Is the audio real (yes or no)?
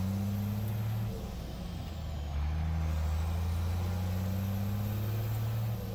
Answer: yes